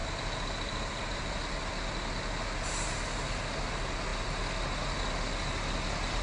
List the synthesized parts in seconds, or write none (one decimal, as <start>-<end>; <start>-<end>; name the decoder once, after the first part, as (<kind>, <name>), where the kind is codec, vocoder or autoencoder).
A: none